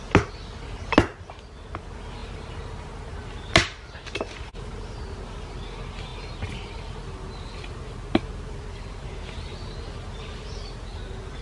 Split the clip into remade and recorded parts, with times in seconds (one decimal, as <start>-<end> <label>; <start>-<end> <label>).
0.0-11.4 recorded